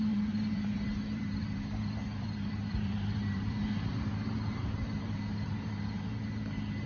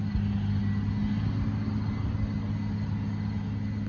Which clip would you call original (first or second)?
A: second